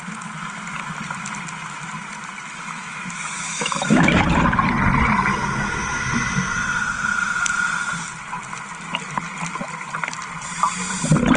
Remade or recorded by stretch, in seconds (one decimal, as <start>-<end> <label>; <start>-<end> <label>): 0.0-2.5 recorded; 2.5-4.2 remade; 4.2-11.4 recorded